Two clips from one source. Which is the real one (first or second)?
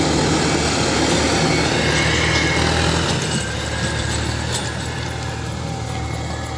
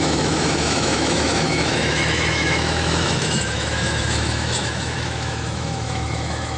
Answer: first